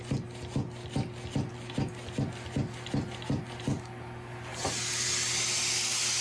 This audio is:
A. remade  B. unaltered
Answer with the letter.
B